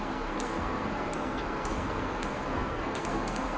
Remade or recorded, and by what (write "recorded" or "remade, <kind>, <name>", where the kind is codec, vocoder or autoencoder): remade, codec, SNAC